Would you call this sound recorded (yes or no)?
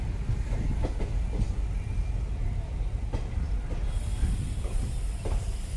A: yes